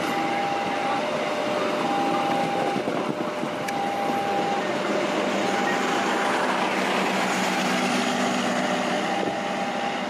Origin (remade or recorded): recorded